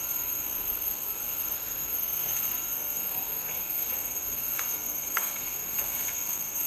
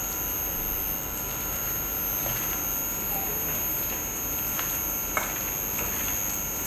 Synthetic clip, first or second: first